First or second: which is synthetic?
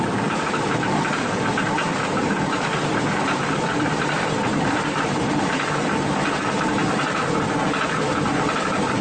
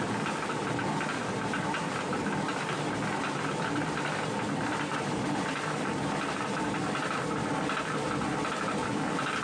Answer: first